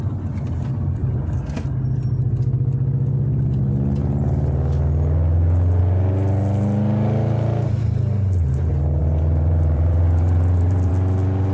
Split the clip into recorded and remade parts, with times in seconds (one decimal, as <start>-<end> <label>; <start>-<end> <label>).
0.0-9.0 recorded; 9.0-10.9 remade; 10.9-11.5 recorded